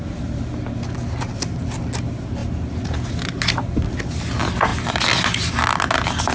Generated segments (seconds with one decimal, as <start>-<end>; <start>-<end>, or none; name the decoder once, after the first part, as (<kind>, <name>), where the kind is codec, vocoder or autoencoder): none